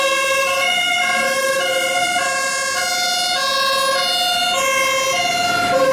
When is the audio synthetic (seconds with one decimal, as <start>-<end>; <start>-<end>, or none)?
0.4-2.5